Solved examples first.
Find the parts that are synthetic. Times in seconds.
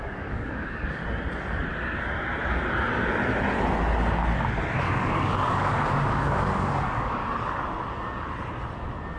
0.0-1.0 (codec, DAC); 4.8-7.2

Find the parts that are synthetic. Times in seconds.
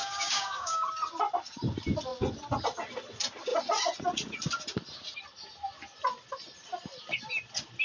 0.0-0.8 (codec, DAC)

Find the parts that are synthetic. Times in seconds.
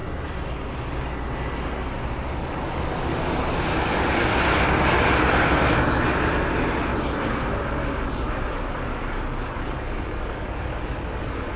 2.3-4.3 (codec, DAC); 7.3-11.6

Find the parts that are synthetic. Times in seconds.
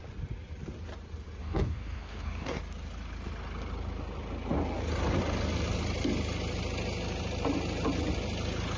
1.4-2.6 (codec, DAC)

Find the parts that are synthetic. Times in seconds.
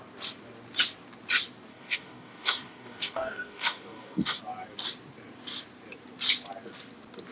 1.7-4.4 (codec, DAC)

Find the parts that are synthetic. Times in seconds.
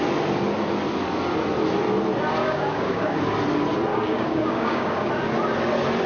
2.4-3.2 (codec, DAC); 3.9-5.1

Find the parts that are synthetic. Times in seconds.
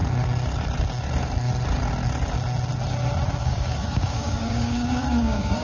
3.4-5.6 (codec, DAC)